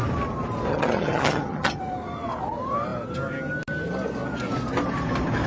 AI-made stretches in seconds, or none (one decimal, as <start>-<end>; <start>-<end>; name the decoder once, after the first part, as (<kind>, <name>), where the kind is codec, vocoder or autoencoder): 0.7-1.8 (vocoder, HiFi-GAN)